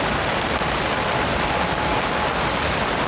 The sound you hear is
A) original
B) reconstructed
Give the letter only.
A